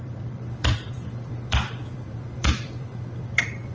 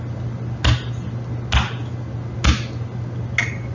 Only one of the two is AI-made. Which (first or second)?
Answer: first